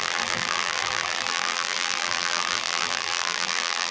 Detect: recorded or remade remade